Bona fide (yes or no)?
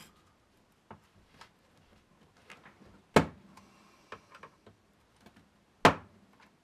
yes